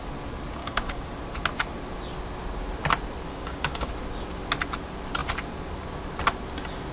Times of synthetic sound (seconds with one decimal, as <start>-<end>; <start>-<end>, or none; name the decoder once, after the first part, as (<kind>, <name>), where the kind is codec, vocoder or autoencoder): 0.6-1.1 (codec, DAC); 3.3-3.9